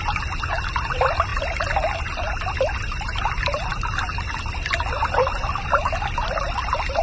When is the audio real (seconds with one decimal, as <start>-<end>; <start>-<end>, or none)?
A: 0.0-7.0